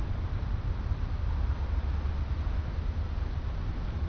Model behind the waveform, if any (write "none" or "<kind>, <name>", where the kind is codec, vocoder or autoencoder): none